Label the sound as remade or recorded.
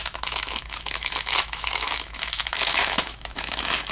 remade